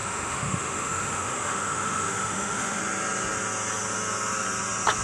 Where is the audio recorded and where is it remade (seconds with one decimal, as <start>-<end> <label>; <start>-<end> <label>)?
0.0-2.8 remade; 2.8-5.0 recorded